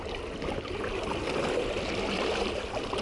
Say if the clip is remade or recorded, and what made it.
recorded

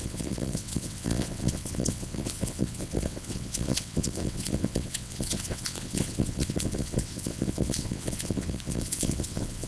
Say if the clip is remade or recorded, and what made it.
remade, vocoder, WaveNeXt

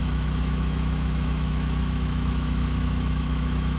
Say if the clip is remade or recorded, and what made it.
remade, autoencoder, DAC-VAE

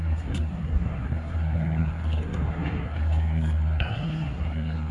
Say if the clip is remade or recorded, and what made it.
remade, codec, SNAC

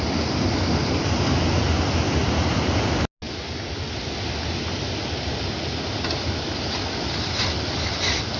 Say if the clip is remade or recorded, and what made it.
recorded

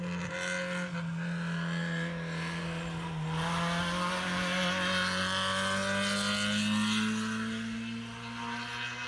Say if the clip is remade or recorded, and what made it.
recorded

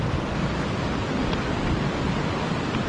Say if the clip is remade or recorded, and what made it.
recorded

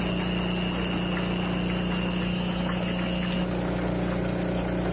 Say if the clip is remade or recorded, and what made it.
recorded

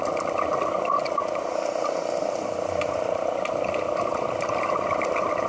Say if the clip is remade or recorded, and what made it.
recorded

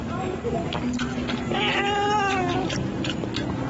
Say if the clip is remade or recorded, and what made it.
recorded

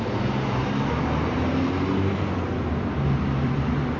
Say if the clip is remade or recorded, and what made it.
recorded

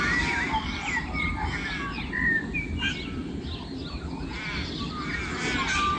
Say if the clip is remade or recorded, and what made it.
recorded